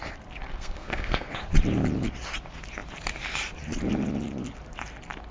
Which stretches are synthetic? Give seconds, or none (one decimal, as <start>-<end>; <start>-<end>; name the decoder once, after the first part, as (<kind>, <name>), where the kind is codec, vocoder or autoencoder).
0.5-1.3 (codec, SNAC)